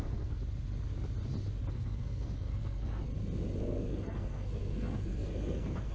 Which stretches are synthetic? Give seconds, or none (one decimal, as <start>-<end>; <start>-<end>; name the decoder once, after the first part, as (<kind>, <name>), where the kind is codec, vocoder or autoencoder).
0.0-0.4 (codec, SNAC); 1.7-3.1; 3.6-5.9